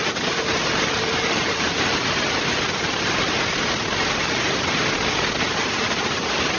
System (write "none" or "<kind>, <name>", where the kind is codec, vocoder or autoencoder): none